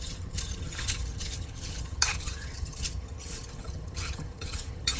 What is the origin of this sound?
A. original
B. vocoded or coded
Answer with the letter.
B